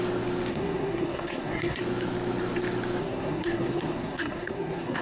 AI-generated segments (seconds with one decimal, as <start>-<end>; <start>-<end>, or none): 0.5-1.8; 3.0-5.0